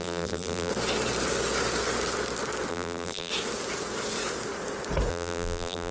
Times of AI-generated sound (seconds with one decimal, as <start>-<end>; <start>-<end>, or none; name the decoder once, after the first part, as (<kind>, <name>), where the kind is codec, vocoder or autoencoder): 0.0-0.7 (vocoder, BigVGAN v2); 2.7-3.3; 5.1-5.9